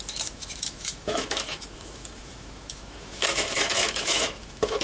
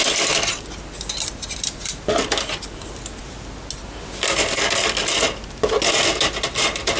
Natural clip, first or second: second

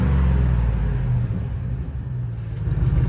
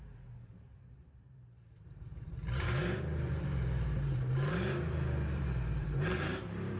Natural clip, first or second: first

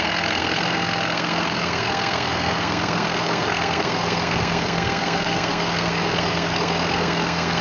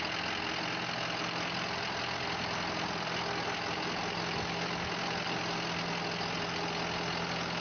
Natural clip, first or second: second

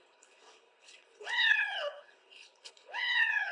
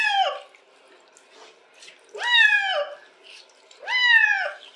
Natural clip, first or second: second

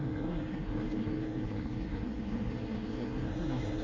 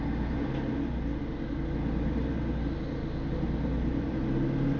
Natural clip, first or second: second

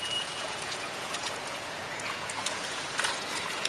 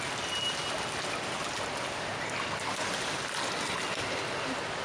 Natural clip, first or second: second